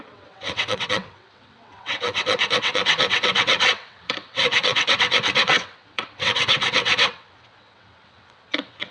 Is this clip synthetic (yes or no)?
yes